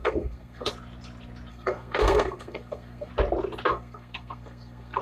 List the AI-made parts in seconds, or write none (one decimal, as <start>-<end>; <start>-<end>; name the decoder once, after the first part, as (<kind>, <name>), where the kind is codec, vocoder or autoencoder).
0.0-0.7 (codec, SNAC); 1.5-3.1; 3.7-5.0